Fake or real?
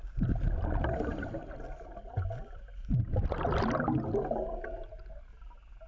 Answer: real